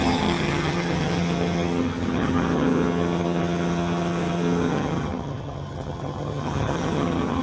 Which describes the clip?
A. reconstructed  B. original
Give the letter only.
A